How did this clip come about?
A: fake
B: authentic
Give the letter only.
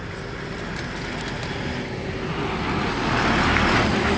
B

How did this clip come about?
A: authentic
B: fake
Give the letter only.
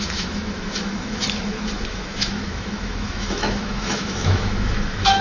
B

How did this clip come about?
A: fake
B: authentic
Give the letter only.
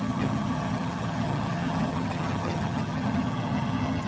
A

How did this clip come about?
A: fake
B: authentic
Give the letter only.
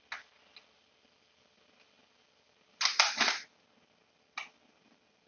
B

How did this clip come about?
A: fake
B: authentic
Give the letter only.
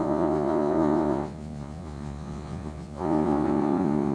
A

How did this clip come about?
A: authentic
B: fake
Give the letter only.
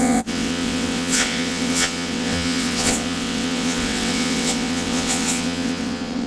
B